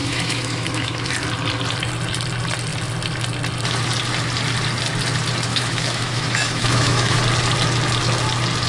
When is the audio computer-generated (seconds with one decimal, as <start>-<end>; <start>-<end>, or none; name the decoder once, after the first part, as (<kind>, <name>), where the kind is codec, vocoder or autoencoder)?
0.0-1.1 (autoencoder, DAC-VAE); 5.5-7.2